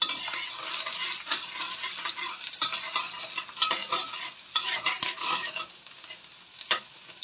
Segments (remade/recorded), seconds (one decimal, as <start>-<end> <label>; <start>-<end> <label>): 0.0-5.0 recorded; 5.0-5.6 remade; 5.6-6.5 recorded; 6.5-7.2 remade